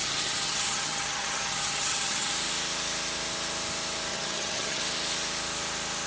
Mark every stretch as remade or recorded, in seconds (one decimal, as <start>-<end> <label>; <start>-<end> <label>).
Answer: 0.0-2.3 remade; 2.3-4.1 recorded; 4.1-4.8 remade; 4.8-6.1 recorded